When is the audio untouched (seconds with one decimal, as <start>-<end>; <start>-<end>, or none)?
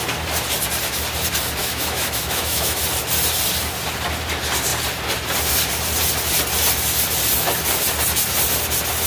0.0-1.6; 2.8-9.1